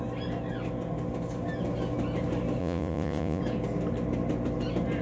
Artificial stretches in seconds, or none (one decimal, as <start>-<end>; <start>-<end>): 2.6-3.4